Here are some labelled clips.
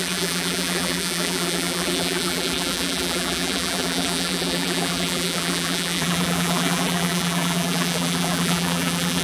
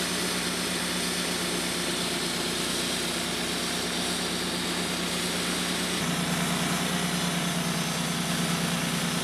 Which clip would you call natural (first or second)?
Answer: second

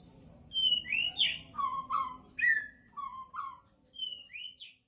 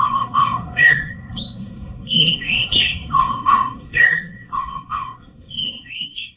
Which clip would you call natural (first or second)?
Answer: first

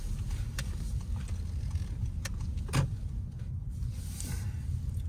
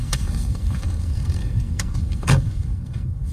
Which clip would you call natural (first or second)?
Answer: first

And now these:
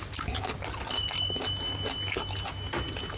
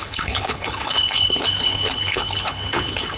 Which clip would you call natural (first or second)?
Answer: first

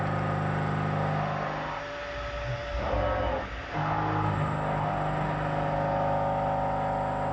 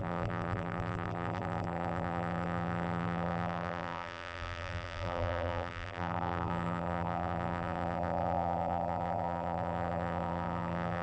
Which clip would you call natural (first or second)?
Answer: first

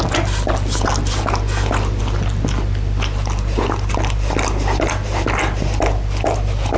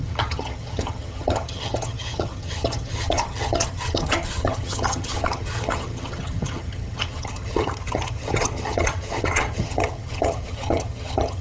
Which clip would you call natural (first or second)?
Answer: first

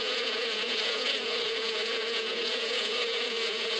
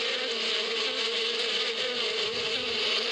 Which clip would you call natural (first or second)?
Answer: second